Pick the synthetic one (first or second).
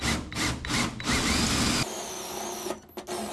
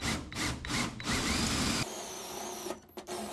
second